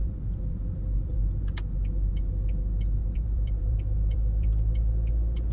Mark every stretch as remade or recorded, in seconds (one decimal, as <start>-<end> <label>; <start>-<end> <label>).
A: 0.0-1.4 remade; 1.4-3.0 recorded; 3.0-5.1 remade; 5.1-5.5 recorded